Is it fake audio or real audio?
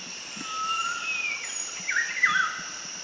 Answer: fake